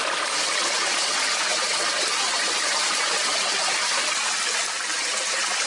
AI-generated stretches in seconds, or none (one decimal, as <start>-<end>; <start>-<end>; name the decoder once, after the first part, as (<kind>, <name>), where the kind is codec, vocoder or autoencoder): none